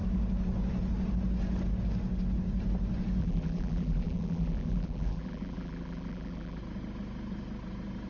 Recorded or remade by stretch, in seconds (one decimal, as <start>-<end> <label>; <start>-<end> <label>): 0.0-3.2 recorded; 3.2-6.6 remade; 6.6-8.1 recorded